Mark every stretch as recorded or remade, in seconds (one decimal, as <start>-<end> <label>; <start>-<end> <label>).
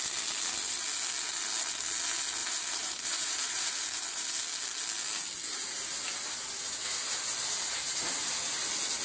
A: 0.0-2.4 recorded; 2.4-4.4 remade; 4.4-9.0 recorded